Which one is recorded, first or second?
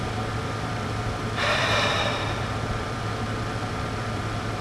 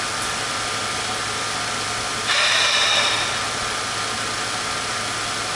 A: second